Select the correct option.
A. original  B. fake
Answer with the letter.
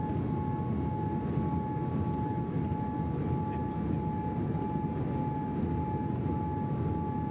A